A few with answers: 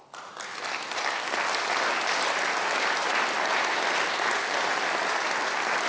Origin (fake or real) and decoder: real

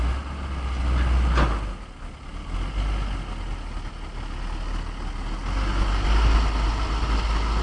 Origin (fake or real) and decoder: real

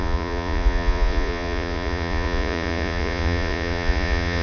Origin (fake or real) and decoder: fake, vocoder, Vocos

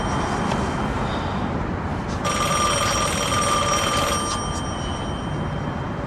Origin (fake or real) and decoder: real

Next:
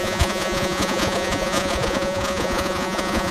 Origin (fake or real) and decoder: fake, vocoder, Vocos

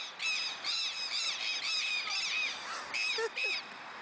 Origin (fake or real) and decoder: real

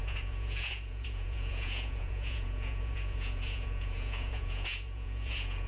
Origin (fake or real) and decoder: fake, vocoder, Vocos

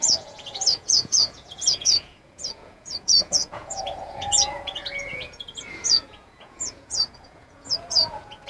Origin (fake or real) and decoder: fake, vocoder, Vocos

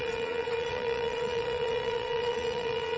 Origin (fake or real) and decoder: fake, vocoder, Vocos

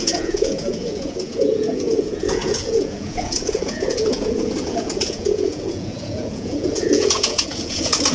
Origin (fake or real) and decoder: fake, vocoder, Vocos